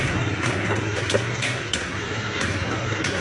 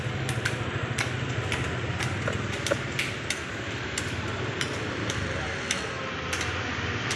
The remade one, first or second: first